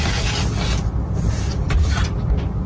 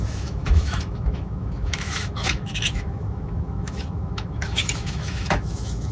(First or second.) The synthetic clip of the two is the second